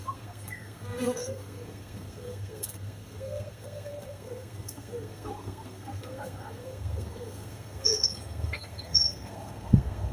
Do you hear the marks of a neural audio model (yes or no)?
yes